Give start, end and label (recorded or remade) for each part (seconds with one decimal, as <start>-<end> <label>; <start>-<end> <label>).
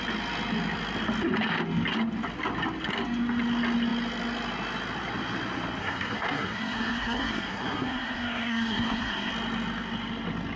0.0-5.8 recorded; 5.8-9.3 remade; 9.3-10.6 recorded